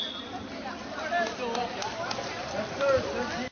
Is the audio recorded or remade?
recorded